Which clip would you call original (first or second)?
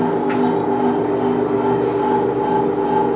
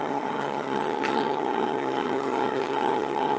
first